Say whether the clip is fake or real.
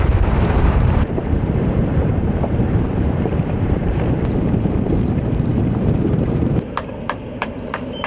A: fake